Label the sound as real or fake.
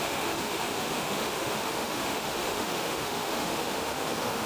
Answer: fake